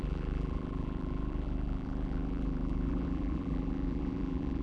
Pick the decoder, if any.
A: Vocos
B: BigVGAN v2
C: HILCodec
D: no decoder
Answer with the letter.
B